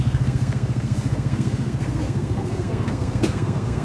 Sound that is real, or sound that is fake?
fake